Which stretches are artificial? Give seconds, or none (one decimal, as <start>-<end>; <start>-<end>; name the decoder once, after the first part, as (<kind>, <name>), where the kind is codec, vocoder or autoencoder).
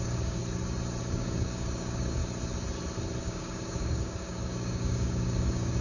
0.0-0.4 (codec, DAC); 1.0-2.2; 3.2-5.8